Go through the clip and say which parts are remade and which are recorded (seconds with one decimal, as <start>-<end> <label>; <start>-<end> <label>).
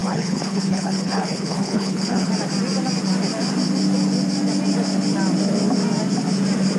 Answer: 0.0-2.3 remade; 2.3-6.8 recorded